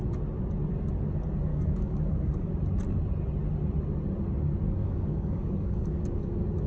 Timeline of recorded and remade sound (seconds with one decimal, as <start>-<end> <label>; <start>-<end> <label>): 0.0-1.5 recorded; 1.5-2.5 remade; 2.5-4.8 recorded; 4.8-6.3 remade; 6.3-6.7 recorded